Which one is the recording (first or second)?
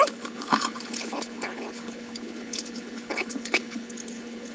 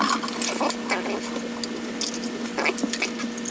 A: second